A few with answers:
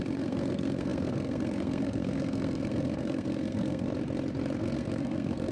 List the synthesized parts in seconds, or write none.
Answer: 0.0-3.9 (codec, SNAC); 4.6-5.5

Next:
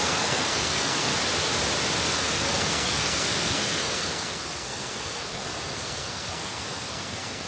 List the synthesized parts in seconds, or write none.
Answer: 0.0-1.1 (codec, SNAC); 2.0-7.5

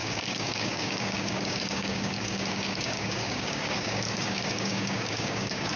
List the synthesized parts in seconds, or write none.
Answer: 0.0-5.8 (codec, DAC)

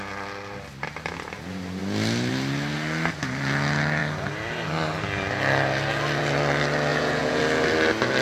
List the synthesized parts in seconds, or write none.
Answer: 6.9-7.4 (vocoder, Vocos)

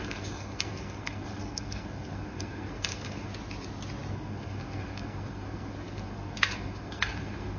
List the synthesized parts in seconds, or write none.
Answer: 0.0-3.3 (codec, SNAC); 4.1-7.6

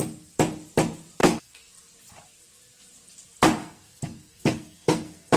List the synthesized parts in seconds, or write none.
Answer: 1.2-1.7 (codec, SNAC); 3.6-5.4

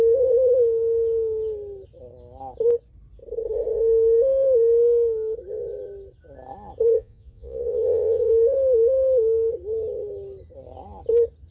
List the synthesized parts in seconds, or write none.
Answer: 6.9-8.3 (vocoder, Vocos)